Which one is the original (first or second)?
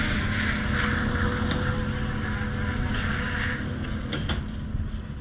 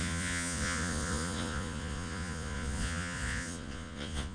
first